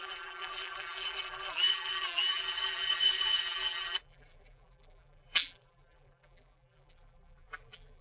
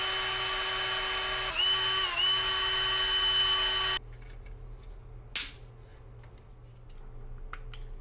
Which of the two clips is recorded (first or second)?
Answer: second